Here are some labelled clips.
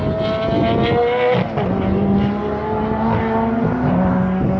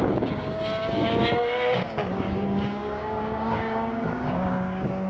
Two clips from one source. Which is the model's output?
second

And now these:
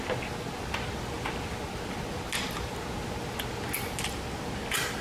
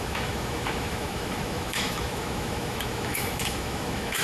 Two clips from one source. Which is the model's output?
second